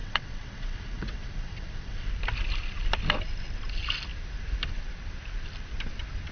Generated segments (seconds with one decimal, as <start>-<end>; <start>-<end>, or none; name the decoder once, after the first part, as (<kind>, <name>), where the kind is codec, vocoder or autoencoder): 0.0-2.1 (vocoder, WaveNeXt)